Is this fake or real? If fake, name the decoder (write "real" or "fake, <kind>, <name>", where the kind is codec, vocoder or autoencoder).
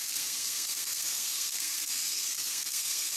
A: fake, codec, SNAC